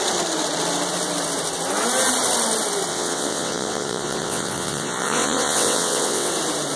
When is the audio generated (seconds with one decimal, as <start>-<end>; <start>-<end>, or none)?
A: 2.9-6.3